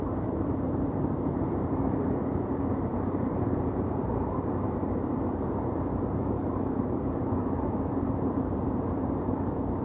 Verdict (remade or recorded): remade